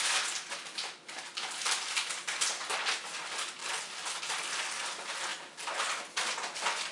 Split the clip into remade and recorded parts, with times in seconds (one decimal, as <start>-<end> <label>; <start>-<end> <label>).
0.0-6.9 recorded